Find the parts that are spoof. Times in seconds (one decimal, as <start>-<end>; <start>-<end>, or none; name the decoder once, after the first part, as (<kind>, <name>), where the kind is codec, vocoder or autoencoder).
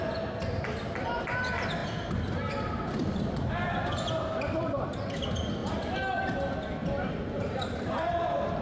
1.8-4.1 (vocoder, BigVGAN v2); 5.6-6.2; 6.8-8.6